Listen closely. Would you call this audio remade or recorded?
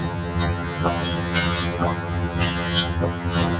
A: remade